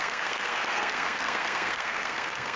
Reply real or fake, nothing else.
fake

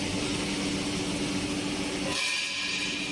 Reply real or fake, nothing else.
real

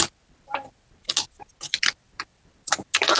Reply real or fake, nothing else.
real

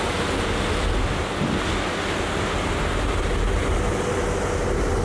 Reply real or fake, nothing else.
real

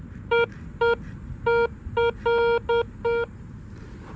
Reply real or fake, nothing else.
real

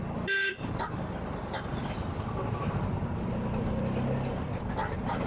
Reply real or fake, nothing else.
real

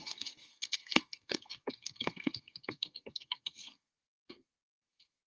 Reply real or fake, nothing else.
fake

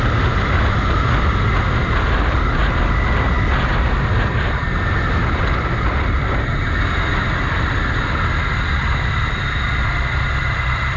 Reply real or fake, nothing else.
real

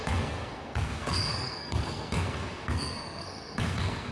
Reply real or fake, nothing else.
fake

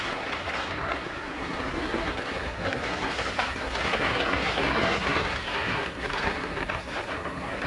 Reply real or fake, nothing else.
fake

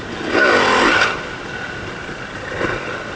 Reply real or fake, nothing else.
real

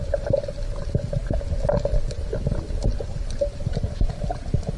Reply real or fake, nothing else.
real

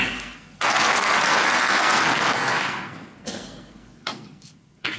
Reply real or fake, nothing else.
fake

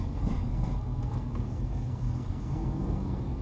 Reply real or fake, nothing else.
fake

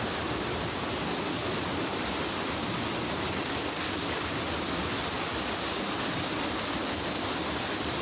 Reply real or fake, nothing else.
real